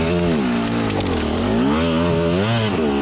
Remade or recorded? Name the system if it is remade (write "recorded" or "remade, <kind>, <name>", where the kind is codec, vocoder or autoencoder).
recorded